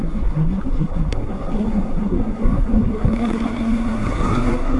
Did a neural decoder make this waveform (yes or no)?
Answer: yes